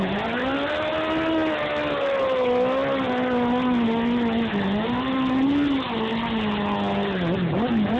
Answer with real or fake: real